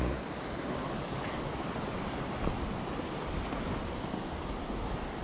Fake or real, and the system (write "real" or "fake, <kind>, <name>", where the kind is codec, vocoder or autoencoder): real